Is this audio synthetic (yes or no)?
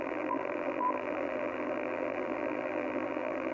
yes